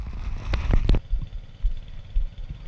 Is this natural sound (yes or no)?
yes